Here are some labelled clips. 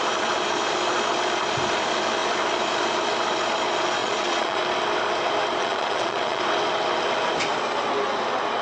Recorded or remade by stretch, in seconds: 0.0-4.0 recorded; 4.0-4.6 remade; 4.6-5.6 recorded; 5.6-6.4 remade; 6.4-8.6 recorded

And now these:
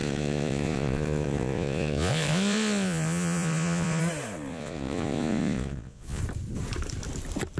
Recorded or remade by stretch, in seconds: 0.0-4.0 remade; 4.0-4.5 recorded; 4.5-6.2 remade; 6.2-7.6 recorded

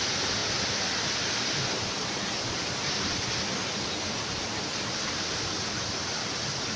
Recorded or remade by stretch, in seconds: 0.0-6.8 recorded

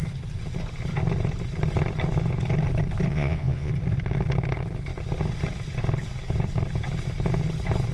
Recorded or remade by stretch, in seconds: 0.0-3.1 recorded; 3.1-3.7 remade; 3.7-7.9 recorded

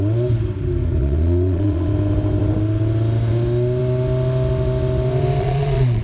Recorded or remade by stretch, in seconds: 0.0-1.0 recorded; 1.0-1.9 remade; 1.9-5.4 recorded; 5.4-6.0 remade

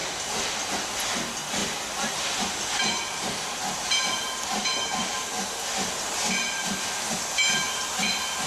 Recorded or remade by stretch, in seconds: 0.0-8.5 recorded